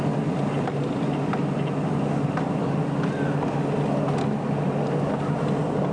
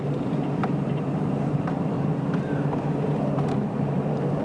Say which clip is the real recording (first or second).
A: first